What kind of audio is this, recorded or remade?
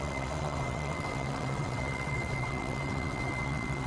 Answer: remade